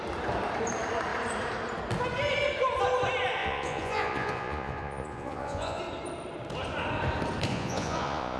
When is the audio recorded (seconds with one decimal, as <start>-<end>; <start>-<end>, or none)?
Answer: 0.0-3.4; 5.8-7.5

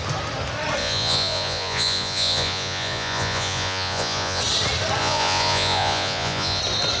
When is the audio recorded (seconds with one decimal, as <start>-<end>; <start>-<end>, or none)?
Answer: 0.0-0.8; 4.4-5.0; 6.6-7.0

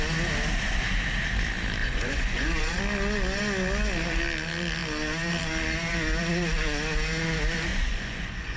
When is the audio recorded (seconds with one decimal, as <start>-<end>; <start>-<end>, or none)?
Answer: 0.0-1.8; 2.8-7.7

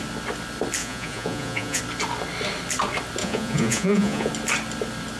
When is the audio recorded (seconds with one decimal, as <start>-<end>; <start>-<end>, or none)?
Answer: 0.0-0.8; 1.8-3.2; 4.3-5.2

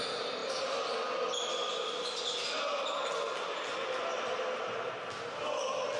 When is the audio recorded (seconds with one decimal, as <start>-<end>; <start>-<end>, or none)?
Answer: 0.0-6.0

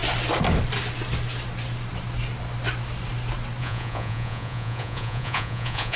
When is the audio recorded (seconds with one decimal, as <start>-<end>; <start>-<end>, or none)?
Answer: 0.0-3.6